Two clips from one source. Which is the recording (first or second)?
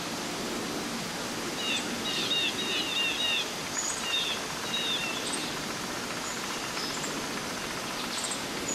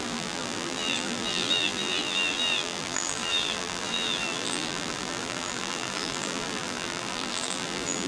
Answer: first